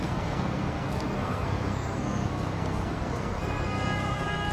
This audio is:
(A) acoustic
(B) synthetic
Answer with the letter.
B